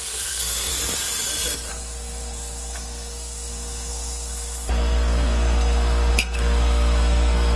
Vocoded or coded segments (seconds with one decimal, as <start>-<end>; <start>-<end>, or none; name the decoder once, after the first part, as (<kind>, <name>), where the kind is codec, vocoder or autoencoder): 0.0-0.7 (codec, SNAC); 1.7-7.6